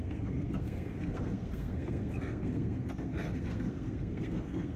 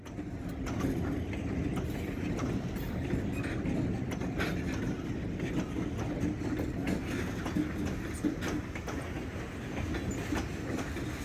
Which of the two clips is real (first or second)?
second